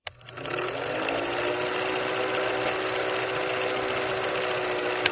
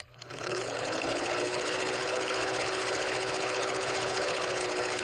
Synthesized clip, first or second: second